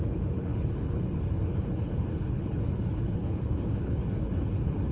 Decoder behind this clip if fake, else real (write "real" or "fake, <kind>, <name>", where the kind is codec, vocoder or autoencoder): fake, codec, HILCodec